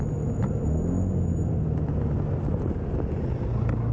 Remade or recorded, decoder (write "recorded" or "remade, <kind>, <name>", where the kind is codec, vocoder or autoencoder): recorded